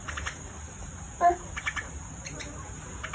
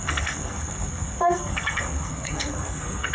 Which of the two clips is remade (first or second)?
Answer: second